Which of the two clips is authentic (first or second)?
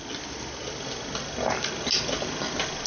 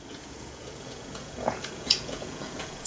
first